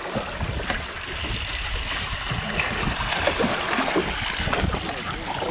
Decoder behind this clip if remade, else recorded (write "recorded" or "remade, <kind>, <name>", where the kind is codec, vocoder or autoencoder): recorded